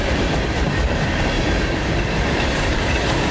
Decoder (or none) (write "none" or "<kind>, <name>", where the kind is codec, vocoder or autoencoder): vocoder, BigVGAN v2